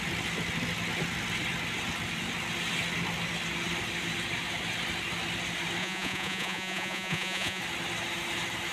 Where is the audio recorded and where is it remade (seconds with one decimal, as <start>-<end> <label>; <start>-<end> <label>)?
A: 0.0-5.8 recorded; 5.8-7.6 remade; 7.6-8.7 recorded